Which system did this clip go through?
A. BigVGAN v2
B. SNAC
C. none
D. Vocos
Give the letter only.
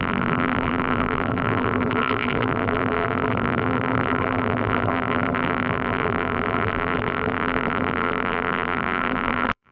A